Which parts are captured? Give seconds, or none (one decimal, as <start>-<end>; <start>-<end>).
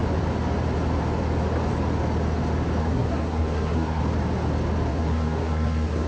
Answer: 0.0-2.8; 4.0-4.9